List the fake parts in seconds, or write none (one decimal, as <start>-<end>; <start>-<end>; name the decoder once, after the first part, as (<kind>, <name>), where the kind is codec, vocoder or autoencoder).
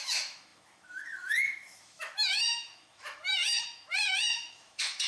0.0-5.1 (autoencoder, DAC-VAE)